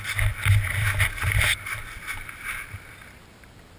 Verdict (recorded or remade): recorded